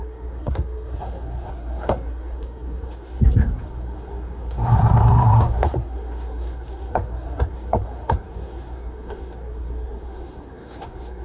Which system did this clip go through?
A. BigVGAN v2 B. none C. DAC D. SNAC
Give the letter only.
D